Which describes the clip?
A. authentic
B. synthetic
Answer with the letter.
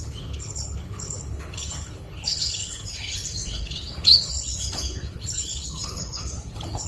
B